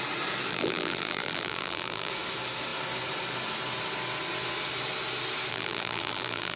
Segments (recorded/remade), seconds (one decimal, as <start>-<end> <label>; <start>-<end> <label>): 0.0-0.5 recorded; 0.5-2.1 remade; 2.1-5.5 recorded; 5.5-6.6 remade